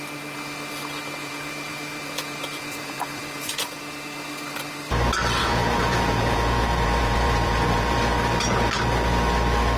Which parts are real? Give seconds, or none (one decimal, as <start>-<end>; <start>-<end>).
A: 0.0-1.2; 3.9-5.4; 8.1-9.8